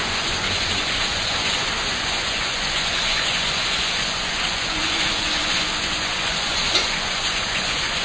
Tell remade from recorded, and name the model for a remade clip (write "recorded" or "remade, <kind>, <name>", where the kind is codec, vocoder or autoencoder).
remade, vocoder, Vocos